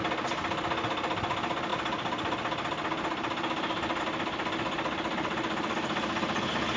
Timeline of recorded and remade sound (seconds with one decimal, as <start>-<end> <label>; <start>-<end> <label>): 0.0-6.8 recorded